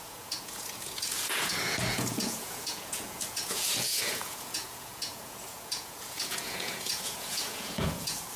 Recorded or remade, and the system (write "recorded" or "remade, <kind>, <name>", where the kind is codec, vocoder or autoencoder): remade, vocoder, Vocos